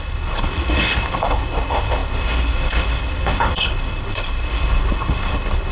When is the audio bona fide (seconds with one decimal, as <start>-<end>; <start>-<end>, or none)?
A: none